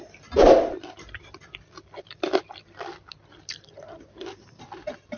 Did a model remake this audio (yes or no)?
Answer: no